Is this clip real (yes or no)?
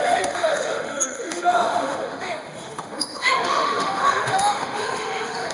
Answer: no